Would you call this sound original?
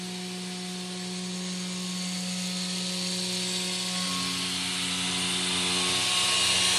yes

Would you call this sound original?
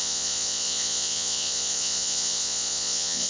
no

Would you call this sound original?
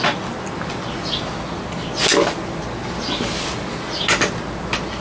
yes